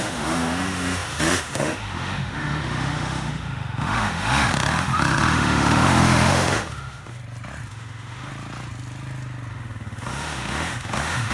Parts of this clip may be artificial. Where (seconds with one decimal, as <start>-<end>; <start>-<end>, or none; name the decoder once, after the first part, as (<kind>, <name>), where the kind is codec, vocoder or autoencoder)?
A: 0.0-7.2 (autoencoder, DAC-VAE); 7.7-8.3; 9.5-11.3